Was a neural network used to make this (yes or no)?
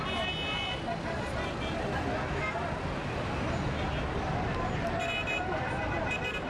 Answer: no